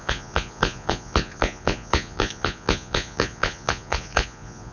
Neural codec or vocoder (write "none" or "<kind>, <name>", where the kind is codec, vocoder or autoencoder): vocoder, Vocos